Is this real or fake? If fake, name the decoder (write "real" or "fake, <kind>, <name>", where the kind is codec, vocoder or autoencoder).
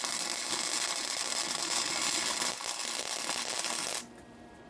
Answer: real